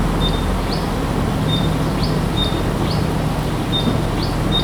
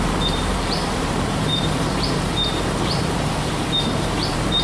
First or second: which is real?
first